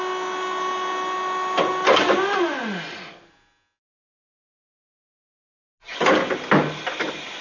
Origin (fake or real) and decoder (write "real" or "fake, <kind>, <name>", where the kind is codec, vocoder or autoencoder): real